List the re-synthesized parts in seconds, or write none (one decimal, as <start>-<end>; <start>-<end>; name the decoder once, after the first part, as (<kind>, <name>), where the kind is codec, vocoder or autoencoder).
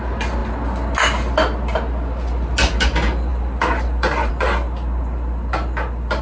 3.3-4.3 (vocoder, BigVGAN v2)